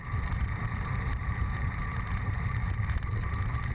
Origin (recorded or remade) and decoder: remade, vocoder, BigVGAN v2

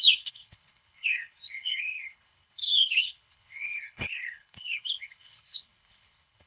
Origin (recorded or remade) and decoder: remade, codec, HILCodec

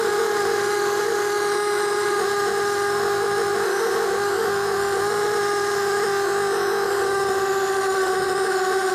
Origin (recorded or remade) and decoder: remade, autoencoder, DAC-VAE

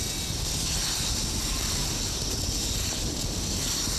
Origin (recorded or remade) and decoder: recorded